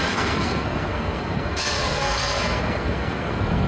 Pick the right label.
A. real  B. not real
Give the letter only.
B